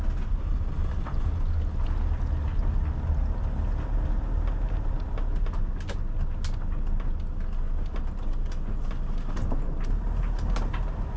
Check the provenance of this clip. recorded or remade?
recorded